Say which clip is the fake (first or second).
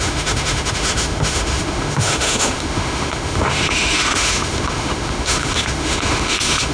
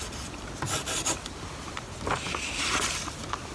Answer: first